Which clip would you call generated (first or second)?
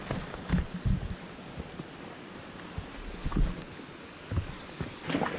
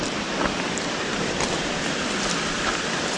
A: second